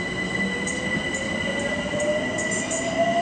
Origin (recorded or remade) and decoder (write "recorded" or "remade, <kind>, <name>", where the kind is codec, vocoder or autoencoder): recorded